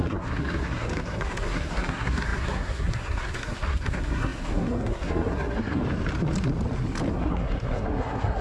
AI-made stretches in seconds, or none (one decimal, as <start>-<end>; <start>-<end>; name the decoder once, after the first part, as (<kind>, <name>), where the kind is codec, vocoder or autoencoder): 0.0-5.8 (codec, SNAC); 7.1-8.4